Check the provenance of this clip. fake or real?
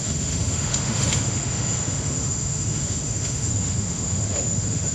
fake